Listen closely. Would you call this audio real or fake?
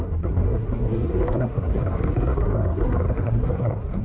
fake